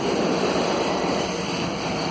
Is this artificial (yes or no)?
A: yes